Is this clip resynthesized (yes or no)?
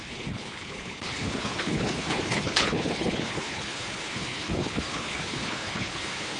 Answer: yes